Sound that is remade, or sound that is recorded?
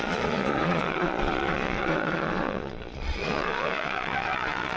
remade